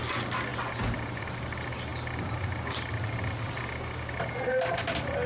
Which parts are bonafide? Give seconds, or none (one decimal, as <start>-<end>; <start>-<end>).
0.0-5.3